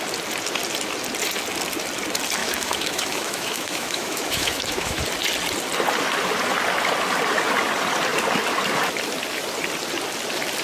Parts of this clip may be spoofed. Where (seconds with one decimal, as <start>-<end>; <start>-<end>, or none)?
2.4-5.0